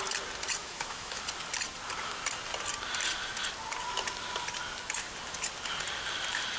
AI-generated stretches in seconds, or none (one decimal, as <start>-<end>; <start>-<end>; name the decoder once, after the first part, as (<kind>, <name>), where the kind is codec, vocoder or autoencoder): 0.6-1.2 (autoencoder, DAC-VAE)